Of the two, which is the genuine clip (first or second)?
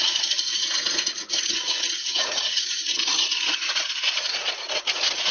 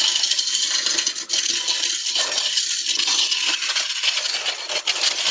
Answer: second